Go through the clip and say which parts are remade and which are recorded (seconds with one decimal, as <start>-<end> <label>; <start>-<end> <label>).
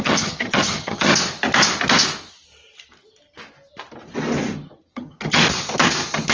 0.0-1.1 remade; 1.1-4.9 recorded; 4.9-5.4 remade; 5.4-6.3 recorded